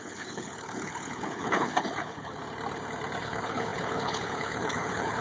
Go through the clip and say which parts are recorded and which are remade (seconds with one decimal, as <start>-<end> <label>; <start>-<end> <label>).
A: 0.0-2.4 remade; 2.4-3.2 recorded; 3.2-5.2 remade